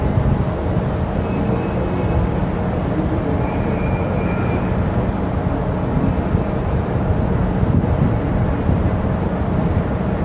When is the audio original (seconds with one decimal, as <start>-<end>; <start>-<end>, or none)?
0.6-3.0